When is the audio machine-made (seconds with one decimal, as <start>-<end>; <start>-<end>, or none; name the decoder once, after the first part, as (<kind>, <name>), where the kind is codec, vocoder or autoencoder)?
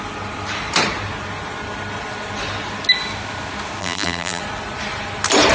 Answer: 3.8-4.4 (vocoder, BigVGAN v2)